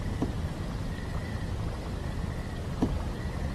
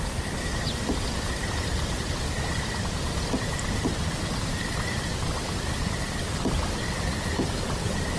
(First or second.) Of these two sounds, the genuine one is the first